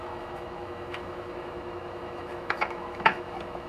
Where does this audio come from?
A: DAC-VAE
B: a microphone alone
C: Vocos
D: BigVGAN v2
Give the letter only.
A